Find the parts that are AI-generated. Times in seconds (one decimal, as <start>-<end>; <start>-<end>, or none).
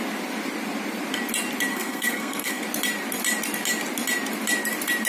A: 1.7-2.6